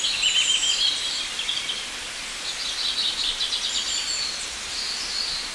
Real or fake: real